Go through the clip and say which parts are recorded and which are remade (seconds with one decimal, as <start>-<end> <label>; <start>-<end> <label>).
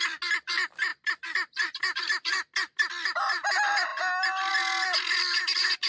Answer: 0.0-5.9 recorded